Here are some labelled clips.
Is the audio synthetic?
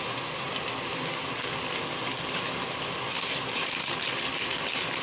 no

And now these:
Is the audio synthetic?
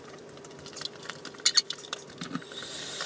no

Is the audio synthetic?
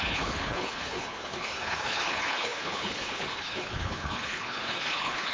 yes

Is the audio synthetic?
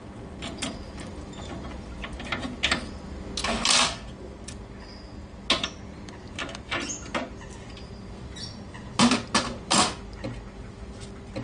no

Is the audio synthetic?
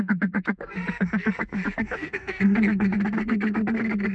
yes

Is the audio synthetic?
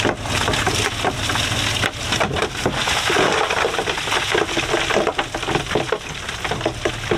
no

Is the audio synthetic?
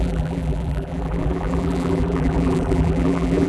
yes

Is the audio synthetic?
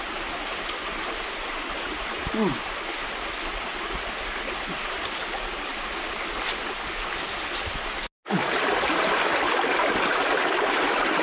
no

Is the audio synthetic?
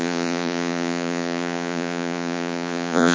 yes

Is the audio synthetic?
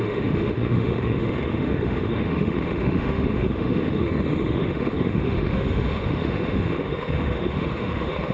yes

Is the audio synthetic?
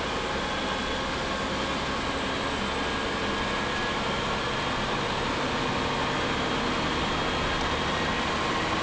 no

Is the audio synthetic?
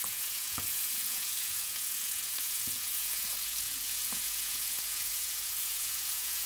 yes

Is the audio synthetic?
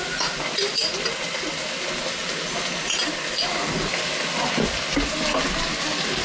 no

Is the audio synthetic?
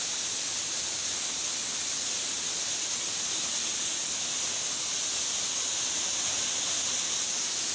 no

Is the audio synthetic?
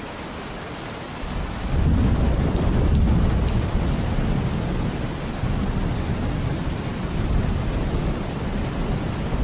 no